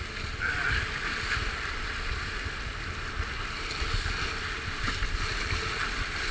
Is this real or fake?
real